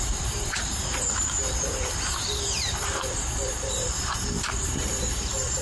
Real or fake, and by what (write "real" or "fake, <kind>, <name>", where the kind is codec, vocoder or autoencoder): fake, vocoder, BigVGAN v2